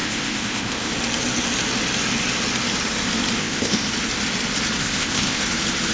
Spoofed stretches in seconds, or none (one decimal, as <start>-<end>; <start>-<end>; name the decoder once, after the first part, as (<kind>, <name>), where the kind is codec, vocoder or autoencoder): 0.0-0.9 (codec, ZipCodec); 3.4-3.9; 4.8-5.4